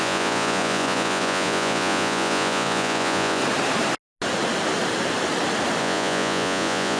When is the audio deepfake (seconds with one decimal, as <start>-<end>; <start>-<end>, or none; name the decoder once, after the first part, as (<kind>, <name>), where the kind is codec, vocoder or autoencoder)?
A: 0.0-3.4 (vocoder, Vocos); 5.8-7.0